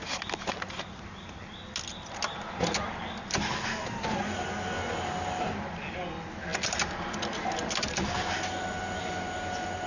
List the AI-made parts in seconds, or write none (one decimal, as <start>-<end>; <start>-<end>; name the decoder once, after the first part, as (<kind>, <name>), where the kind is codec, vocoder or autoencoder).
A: none